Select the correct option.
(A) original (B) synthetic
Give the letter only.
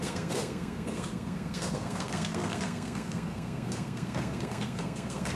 B